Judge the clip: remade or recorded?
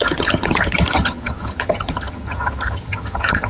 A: remade